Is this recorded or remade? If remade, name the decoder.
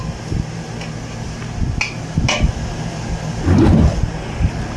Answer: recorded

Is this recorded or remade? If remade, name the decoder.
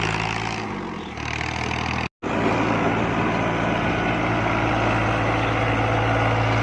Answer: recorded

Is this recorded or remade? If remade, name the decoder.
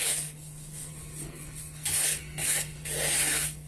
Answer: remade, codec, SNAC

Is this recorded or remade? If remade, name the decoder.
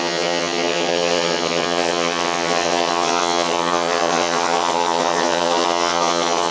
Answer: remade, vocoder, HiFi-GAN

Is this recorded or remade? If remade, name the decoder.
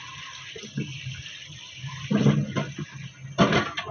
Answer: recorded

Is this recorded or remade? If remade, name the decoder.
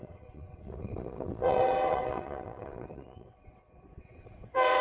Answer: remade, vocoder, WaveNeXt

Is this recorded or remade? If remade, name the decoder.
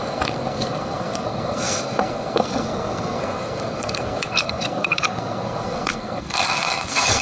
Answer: remade, codec, SNAC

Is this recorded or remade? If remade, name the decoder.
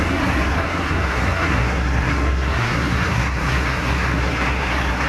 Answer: remade, codec, SNAC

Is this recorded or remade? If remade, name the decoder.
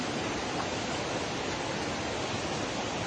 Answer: recorded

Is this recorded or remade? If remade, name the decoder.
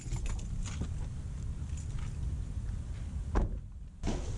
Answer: recorded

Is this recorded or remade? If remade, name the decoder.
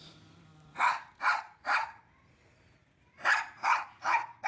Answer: recorded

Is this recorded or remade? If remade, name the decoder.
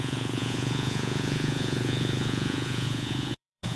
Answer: remade, vocoder, Vocos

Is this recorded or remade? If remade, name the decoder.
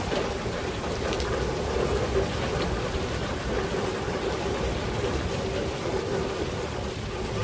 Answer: recorded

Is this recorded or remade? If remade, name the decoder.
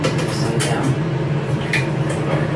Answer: recorded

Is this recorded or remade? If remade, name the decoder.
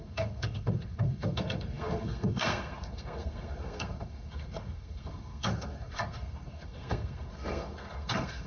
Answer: remade, codec, SNAC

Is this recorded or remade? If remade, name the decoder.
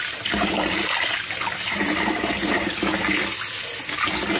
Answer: recorded